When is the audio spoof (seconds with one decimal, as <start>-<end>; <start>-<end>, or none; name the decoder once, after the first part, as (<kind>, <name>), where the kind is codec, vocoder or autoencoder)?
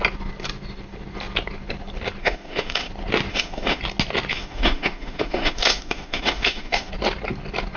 2.2-2.9 (autoencoder, DAC-VAE); 3.3-3.8; 4.3-6.9